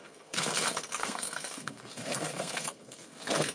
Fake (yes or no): yes